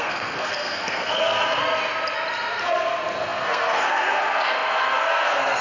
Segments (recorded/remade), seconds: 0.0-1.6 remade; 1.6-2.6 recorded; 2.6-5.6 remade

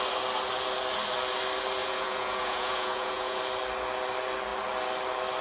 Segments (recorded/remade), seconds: 0.0-1.8 recorded; 1.8-3.4 remade; 3.4-5.4 recorded

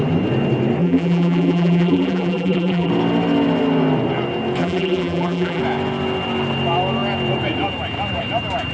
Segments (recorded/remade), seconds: 0.0-0.8 recorded; 0.8-2.9 remade; 2.9-4.6 recorded; 4.6-5.6 remade; 5.6-8.7 recorded

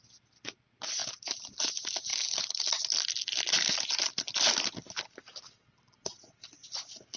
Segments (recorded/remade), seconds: 0.0-7.2 recorded

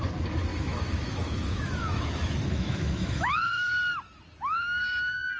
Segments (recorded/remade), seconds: 0.0-0.5 recorded; 0.5-3.7 remade; 3.7-5.4 recorded

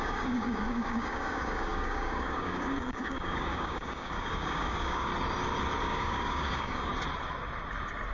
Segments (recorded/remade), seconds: 0.0-5.1 remade; 5.1-5.8 recorded; 5.8-6.9 remade; 6.9-8.1 recorded

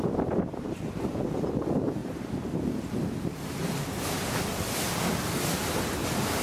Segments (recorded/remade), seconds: 0.0-6.4 remade

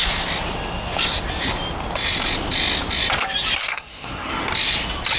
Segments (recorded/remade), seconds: 0.0-3.6 recorded; 3.6-4.3 remade; 4.3-5.2 recorded